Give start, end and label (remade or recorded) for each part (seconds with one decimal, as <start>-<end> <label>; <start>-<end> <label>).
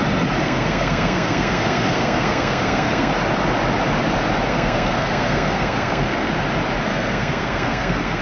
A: 0.0-0.4 recorded; 0.4-3.1 remade; 3.1-4.5 recorded; 4.5-6.3 remade; 6.3-6.9 recorded; 6.9-8.2 remade